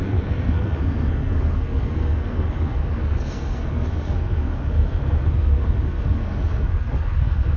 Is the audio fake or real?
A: fake